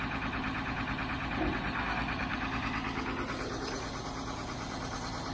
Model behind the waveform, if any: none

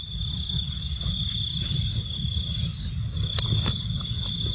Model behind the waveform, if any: none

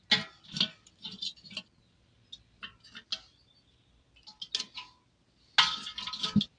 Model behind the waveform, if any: none